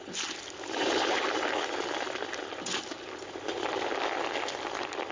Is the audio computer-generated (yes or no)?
no